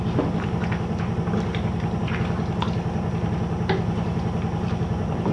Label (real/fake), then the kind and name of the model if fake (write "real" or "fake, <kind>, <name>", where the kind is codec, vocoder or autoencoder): fake, vocoder, BigVGAN v2